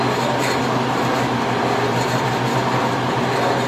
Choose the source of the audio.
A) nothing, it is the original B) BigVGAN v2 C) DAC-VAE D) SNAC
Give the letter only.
A